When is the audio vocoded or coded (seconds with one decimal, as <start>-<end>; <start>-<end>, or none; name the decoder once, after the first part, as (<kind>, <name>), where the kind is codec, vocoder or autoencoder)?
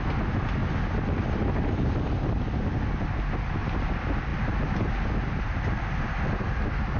none